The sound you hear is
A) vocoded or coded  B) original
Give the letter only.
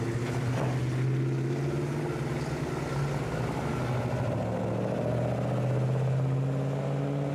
B